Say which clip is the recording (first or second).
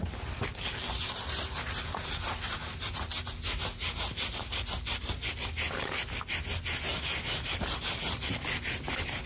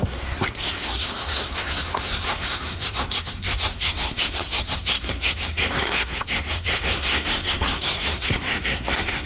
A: first